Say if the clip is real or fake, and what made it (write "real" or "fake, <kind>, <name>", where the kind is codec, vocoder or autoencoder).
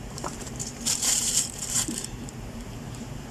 fake, vocoder, BigVGAN v2